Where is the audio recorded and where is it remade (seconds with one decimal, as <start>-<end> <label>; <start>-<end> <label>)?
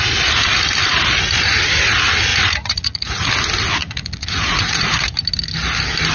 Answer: 0.0-2.3 recorded; 2.3-3.3 remade; 3.3-3.8 recorded; 3.8-5.0 remade; 5.0-6.1 recorded